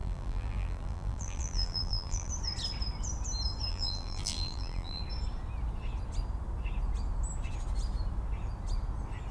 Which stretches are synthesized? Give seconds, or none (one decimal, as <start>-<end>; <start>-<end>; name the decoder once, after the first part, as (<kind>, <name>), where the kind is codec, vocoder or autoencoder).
0.0-2.3 (vocoder, BigVGAN v2); 3.7-5.0